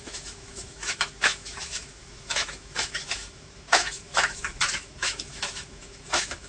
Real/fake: fake